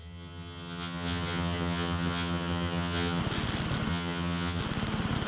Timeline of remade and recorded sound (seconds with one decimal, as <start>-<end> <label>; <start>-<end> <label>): 0.0-3.2 remade; 3.2-3.9 recorded; 3.9-4.6 remade; 4.6-5.3 recorded